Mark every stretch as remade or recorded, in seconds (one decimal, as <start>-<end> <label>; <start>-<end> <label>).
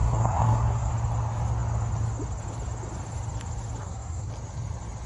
0.0-0.9 remade; 0.9-3.8 recorded; 3.8-4.3 remade; 4.3-5.1 recorded